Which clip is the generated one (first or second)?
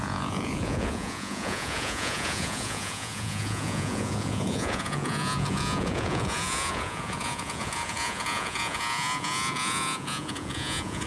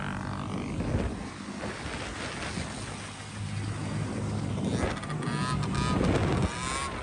first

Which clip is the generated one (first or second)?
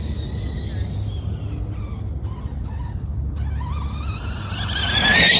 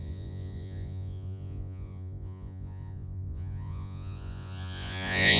second